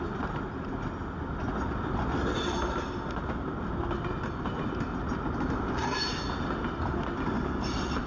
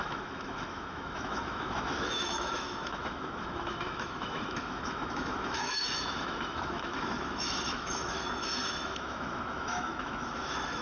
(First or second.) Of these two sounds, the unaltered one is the first